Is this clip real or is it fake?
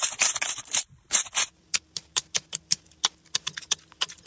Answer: fake